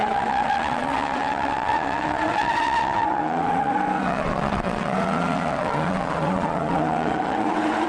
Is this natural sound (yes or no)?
no